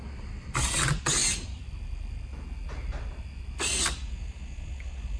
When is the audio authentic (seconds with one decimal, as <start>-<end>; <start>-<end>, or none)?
0.0-5.2